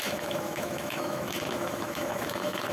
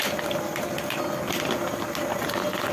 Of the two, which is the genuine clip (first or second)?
second